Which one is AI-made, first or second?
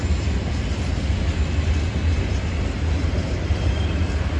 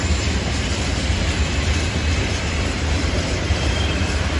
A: second